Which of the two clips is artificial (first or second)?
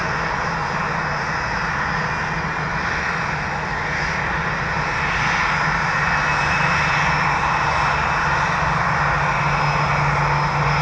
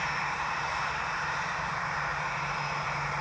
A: second